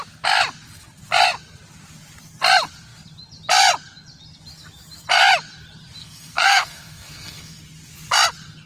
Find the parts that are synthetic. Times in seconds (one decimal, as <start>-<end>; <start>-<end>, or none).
6.0-7.6